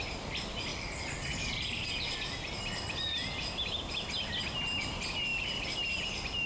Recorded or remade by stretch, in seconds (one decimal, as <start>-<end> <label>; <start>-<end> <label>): 0.0-0.7 recorded; 0.7-2.5 remade; 2.5-5.3 recorded; 5.3-6.0 remade; 6.0-6.5 recorded